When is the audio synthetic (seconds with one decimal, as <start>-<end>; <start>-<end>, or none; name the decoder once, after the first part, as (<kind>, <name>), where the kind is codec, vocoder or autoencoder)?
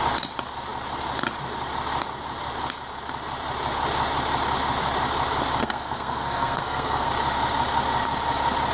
5.6-7.1 (codec, SNAC)